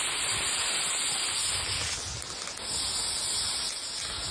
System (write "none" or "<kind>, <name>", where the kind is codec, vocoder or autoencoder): none